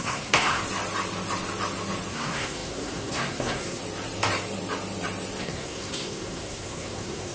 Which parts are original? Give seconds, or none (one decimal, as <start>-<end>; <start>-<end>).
0.6-2.1; 3.8-5.4